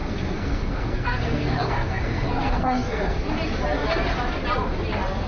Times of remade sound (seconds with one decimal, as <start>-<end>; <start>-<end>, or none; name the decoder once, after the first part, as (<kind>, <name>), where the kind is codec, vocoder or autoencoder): 0.0-3.2 (codec, SNAC)